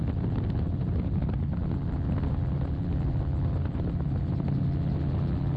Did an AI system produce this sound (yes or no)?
no